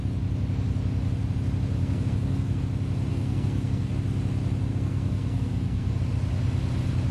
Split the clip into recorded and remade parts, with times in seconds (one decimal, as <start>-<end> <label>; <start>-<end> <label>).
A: 0.0-1.8 recorded; 1.8-2.6 remade; 2.6-3.1 recorded; 3.1-3.9 remade; 3.9-4.7 recorded; 4.7-6.0 remade; 6.0-7.1 recorded